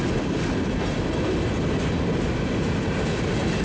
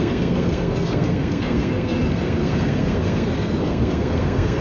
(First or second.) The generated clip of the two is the second